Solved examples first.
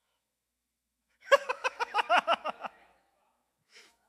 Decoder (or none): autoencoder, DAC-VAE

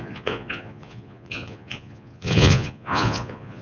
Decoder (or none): vocoder, Vocos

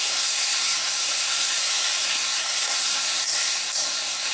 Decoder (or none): codec, SNAC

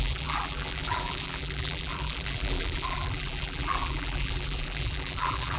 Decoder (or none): vocoder, BigVGAN v2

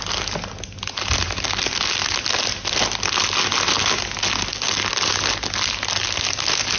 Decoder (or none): none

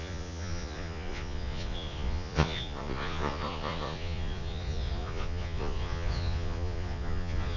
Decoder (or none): vocoder, Vocos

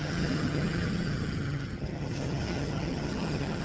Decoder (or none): vocoder, HiFi-GAN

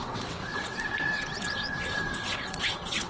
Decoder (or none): vocoder, WaveNeXt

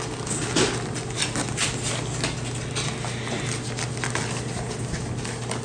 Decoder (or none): none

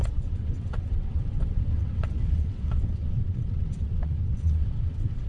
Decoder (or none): vocoder, WaveNeXt